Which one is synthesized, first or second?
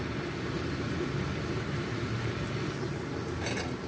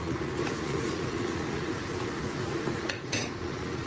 second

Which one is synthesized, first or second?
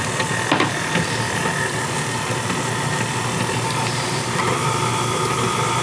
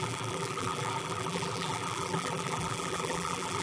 second